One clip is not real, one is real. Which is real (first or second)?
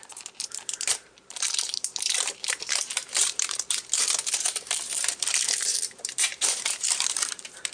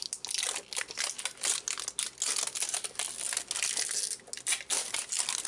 second